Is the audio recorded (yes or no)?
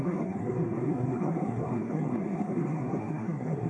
no